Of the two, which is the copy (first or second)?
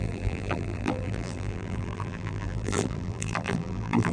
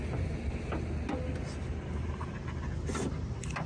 first